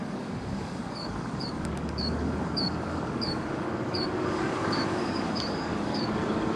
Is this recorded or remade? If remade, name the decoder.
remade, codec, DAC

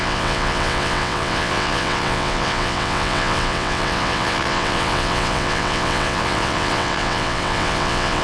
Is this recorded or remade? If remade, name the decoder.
remade, vocoder, WaveNeXt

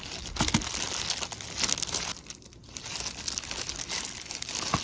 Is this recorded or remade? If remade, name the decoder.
recorded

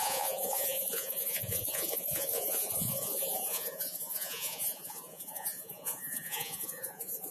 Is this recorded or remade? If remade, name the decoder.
remade, vocoder, Vocos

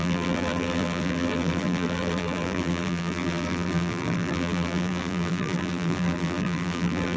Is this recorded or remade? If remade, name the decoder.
remade, vocoder, BigVGAN v2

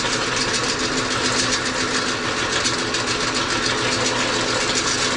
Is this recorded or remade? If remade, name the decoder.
recorded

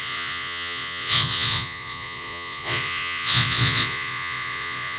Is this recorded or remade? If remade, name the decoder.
remade, vocoder, Vocos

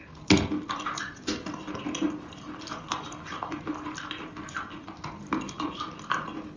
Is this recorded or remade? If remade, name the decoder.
recorded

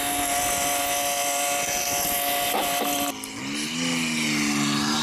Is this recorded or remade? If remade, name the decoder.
recorded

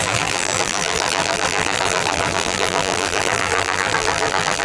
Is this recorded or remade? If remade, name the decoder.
remade, vocoder, BigVGAN v2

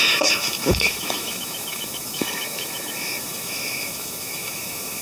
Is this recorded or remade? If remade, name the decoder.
remade, autoencoder, DAC-VAE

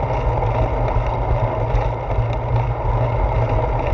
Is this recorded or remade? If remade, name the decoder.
recorded